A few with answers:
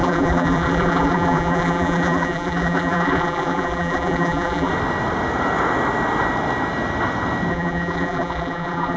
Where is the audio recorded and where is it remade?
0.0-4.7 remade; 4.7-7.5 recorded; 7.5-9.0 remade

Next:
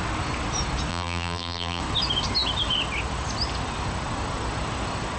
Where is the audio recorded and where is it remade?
0.0-0.9 recorded; 0.9-1.8 remade; 1.8-5.2 recorded

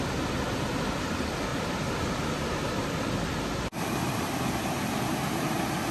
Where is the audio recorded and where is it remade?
0.0-1.5 recorded; 1.5-2.9 remade; 2.9-5.9 recorded

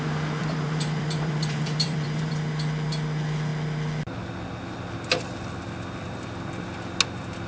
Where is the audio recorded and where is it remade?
0.0-0.4 recorded; 0.4-2.3 remade; 2.3-7.5 recorded

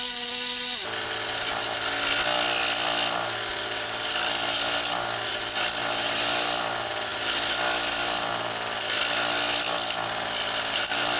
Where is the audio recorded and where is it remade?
0.0-11.2 recorded